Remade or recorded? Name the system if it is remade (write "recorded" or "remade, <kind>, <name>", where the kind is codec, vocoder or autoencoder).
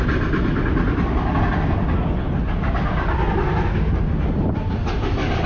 recorded